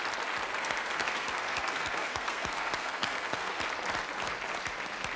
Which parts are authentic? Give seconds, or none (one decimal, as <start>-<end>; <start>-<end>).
0.0-0.5; 3.6-5.2